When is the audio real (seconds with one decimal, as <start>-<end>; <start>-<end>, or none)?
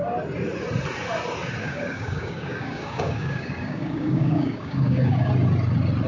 0.0-1.6; 5.3-6.1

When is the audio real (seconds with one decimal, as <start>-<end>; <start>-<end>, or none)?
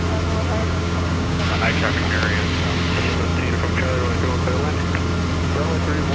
0.0-0.6; 1.9-6.1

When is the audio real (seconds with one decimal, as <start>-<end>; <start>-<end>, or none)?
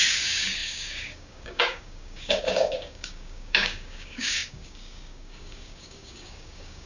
none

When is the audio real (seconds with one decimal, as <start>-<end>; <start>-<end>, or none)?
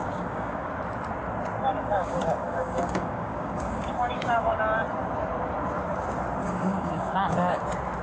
0.7-1.7; 4.6-6.4; 7.6-8.0